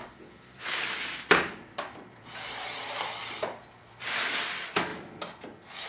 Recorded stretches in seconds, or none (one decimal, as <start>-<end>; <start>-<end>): 2.3-3.2; 4.1-5.9